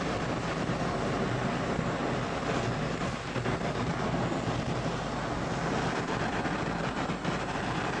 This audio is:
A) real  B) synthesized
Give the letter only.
A